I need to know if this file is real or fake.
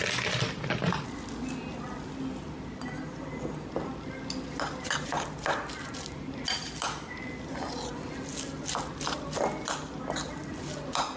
real